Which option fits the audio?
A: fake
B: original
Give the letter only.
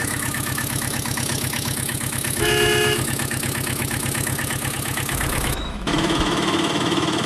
A